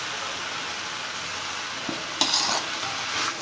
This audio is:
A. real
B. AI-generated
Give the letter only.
A